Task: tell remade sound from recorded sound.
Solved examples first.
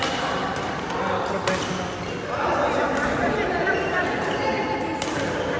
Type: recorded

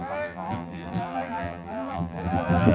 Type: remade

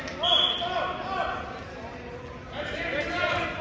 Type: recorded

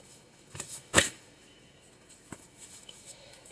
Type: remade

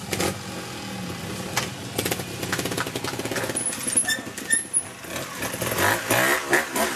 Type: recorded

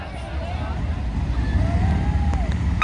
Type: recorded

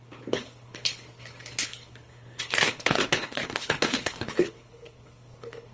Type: remade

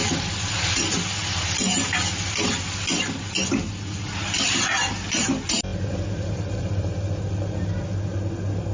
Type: recorded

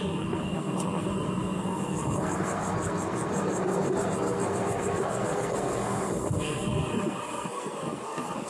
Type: remade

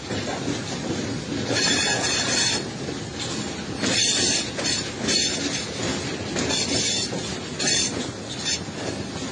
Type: recorded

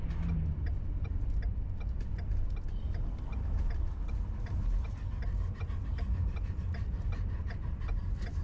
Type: recorded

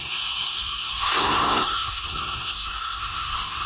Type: remade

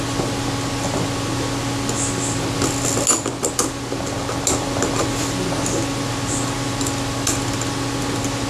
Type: recorded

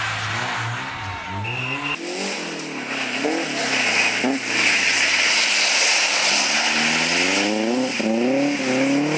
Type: recorded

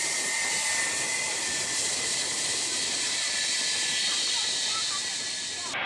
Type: recorded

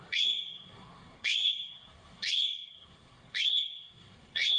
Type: remade